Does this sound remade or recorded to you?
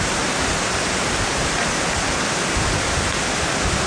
recorded